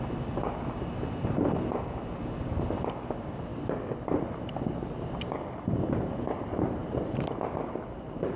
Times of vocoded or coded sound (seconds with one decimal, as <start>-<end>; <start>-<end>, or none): none